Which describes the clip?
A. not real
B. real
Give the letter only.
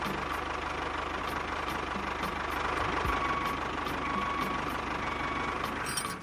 B